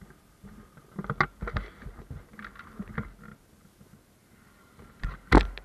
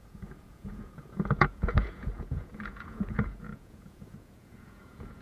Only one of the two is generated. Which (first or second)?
second